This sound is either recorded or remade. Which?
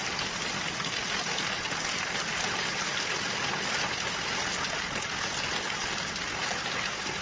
recorded